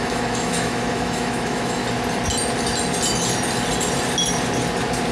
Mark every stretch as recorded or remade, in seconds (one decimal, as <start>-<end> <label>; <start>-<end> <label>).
0.0-1.8 remade; 1.8-5.1 recorded